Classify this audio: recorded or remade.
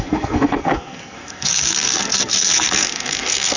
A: remade